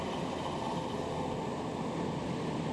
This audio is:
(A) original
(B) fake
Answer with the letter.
A